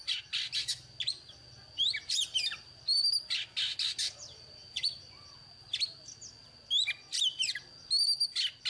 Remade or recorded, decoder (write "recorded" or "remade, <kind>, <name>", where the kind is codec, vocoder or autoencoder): recorded